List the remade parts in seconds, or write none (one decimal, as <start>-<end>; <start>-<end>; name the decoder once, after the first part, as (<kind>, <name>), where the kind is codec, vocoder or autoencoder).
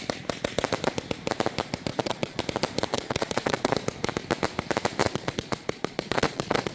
1.9-2.4 (vocoder, Vocos); 2.9-3.7; 5.0-6.7